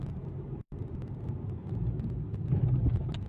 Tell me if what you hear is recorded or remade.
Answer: recorded